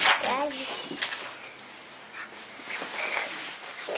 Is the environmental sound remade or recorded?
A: recorded